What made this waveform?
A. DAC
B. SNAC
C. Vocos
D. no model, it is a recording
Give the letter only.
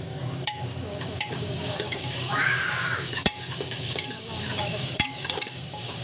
A